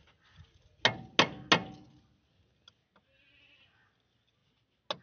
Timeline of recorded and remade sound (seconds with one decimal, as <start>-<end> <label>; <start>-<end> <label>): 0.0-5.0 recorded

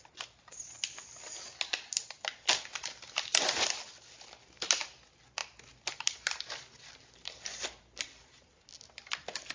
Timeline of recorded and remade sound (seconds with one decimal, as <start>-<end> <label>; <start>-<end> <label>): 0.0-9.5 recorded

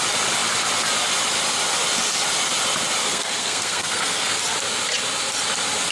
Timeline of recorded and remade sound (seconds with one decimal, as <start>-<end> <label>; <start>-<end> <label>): 0.0-3.0 recorded; 3.0-4.4 remade; 4.4-5.9 recorded